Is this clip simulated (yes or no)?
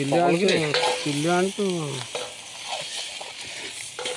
no